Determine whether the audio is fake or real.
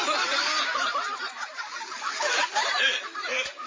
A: real